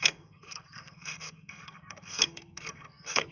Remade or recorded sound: remade